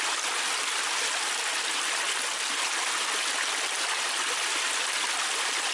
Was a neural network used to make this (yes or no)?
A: no